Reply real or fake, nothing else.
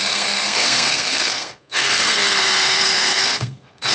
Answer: fake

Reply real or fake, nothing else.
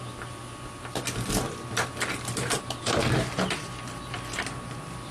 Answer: real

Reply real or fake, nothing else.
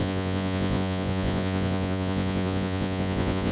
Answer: fake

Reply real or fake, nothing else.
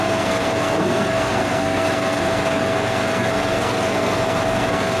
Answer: fake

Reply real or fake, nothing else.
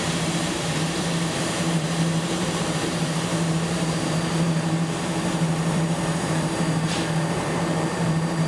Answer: fake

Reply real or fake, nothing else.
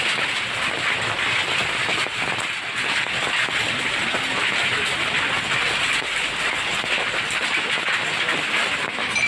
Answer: real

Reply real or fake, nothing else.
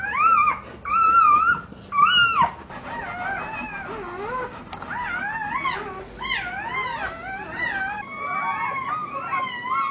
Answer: real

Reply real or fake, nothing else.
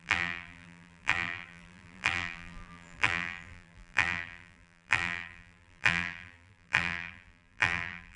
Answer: fake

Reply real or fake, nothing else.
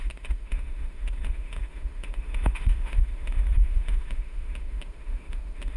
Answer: fake